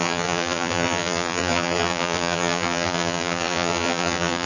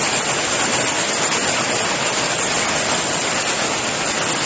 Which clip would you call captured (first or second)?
second